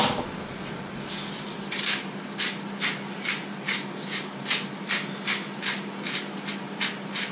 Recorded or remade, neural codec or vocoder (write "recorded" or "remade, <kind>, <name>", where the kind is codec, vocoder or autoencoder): recorded